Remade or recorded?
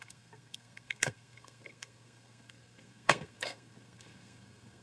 remade